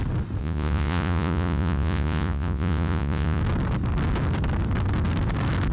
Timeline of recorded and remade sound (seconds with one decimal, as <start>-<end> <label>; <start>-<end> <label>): 0.0-0.4 recorded; 0.4-3.4 remade; 3.4-5.7 recorded